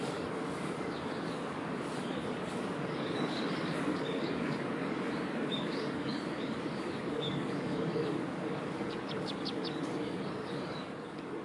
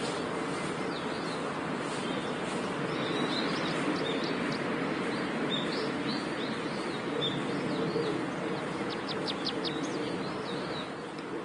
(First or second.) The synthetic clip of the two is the first